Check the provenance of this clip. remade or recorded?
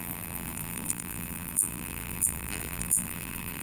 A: remade